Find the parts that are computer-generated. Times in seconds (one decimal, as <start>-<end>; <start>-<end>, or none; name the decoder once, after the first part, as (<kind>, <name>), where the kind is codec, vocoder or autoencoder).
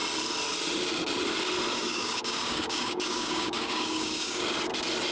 1.7-4.4 (codec, DAC)